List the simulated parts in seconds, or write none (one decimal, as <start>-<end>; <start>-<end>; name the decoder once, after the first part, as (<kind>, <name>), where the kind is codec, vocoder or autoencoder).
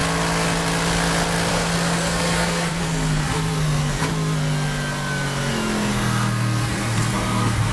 1.5-3.8 (codec, SNAC); 5.9-7.7